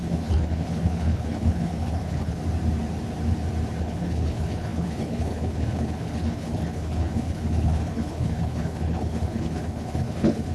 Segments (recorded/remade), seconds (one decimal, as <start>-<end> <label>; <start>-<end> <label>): 0.0-2.4 remade; 2.4-3.8 recorded; 3.8-10.5 remade